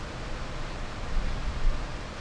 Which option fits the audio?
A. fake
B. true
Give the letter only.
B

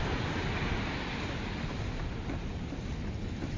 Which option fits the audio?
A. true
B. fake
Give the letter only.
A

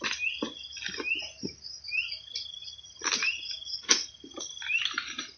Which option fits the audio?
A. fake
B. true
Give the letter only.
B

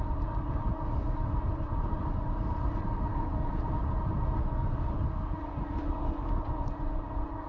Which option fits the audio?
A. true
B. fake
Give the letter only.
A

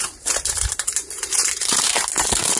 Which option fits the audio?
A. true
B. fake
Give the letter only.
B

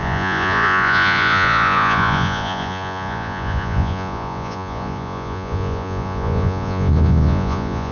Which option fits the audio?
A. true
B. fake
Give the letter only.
B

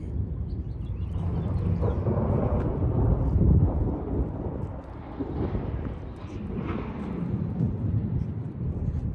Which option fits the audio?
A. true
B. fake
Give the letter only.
A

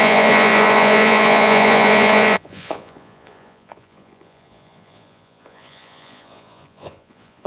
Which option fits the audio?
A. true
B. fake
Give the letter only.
B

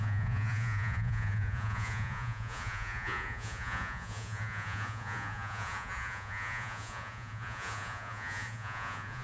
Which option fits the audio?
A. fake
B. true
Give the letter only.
A